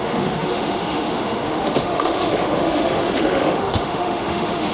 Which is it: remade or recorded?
remade